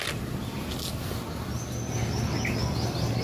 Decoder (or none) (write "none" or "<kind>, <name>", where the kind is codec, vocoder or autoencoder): none